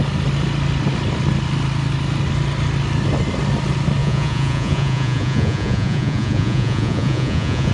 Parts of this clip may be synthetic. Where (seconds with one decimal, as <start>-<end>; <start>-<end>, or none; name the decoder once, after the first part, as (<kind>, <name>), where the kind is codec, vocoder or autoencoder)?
4.0-7.7 (vocoder, Vocos)